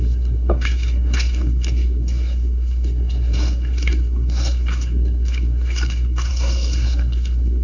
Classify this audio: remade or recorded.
remade